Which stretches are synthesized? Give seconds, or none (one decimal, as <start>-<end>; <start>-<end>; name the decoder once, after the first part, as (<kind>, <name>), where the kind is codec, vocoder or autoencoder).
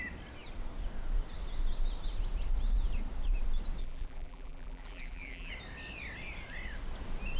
3.8-5.5 (vocoder, BigVGAN v2)